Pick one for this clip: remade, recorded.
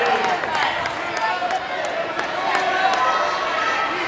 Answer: recorded